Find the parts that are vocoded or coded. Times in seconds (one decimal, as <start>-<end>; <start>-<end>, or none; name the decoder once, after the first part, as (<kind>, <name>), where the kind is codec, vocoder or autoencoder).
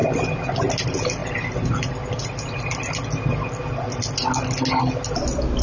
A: 1.2-2.9 (vocoder, BigVGAN v2)